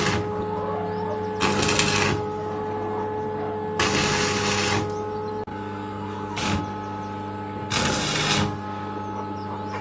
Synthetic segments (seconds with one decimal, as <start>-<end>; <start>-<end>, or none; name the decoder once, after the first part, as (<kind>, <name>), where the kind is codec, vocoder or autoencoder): 5.5-6.6 (codec, DAC)